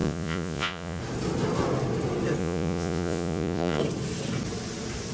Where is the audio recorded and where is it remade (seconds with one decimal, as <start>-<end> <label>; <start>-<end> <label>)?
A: 0.0-1.0 remade; 1.0-2.4 recorded; 2.4-3.8 remade; 3.8-5.1 recorded

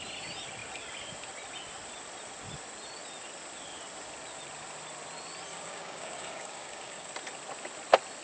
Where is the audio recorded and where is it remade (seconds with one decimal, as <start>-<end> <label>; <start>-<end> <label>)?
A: 0.0-5.5 recorded; 5.5-7.1 remade; 7.1-8.2 recorded

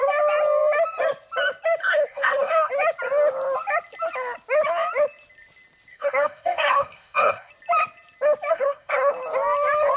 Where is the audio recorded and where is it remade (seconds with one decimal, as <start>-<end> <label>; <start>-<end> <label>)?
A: 0.0-1.8 recorded; 1.8-2.7 remade; 2.7-5.9 recorded; 5.9-7.5 remade; 7.5-8.5 recorded; 8.5-9.1 remade; 9.1-10.0 recorded

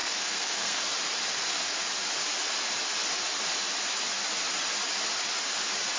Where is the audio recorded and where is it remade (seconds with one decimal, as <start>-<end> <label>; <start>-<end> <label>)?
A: 0.0-0.8 remade; 0.8-6.0 recorded